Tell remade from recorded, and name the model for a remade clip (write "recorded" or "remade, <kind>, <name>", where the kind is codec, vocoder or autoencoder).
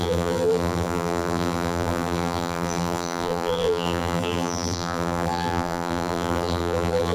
remade, vocoder, BigVGAN v2